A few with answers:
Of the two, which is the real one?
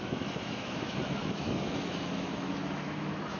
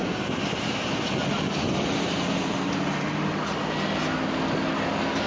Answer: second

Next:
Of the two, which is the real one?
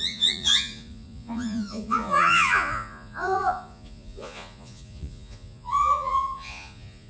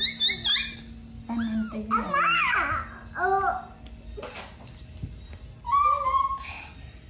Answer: second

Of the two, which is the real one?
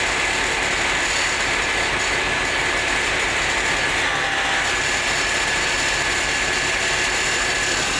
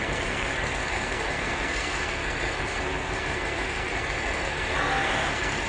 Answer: first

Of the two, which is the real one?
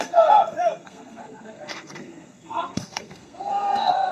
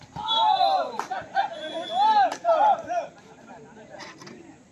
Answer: second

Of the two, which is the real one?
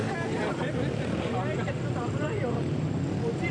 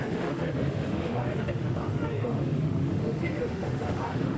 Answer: first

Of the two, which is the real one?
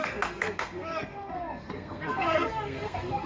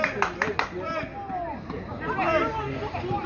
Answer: second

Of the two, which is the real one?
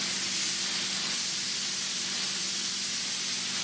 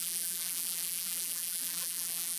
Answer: first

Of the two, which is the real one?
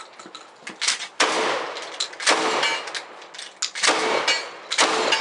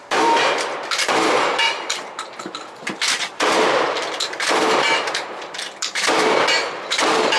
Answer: first